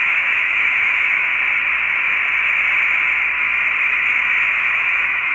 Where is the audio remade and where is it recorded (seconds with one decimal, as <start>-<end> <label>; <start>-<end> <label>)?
0.0-1.3 remade; 1.3-4.5 recorded; 4.5-5.3 remade